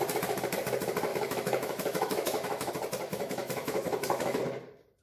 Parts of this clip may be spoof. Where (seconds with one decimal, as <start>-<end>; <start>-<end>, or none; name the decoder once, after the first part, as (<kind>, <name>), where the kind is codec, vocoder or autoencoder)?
1.1-2.7 (autoencoder, DAC-VAE); 3.1-4.4